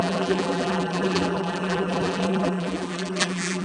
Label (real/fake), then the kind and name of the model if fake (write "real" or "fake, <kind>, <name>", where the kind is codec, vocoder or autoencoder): fake, vocoder, BigVGAN v2